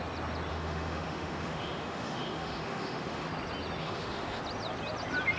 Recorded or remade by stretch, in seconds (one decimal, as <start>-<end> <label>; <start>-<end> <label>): 0.0-0.5 recorded; 0.5-3.3 remade; 3.3-3.8 recorded; 3.8-4.4 remade; 4.4-5.4 recorded